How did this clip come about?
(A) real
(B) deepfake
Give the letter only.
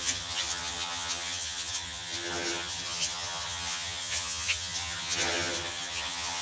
B